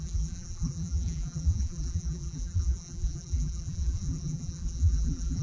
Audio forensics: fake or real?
fake